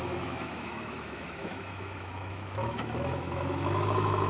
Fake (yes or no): yes